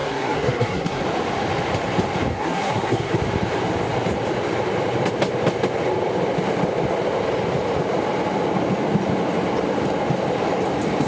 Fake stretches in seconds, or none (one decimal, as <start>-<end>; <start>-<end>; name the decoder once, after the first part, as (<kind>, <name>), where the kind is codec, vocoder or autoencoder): 0.0-1.0 (codec, SNAC); 2.3-3.1